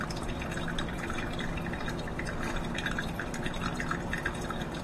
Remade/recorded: remade